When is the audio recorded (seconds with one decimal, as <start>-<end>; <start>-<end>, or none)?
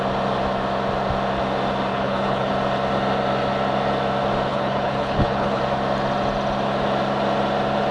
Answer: 0.0-1.9; 2.5-4.5; 5.6-7.9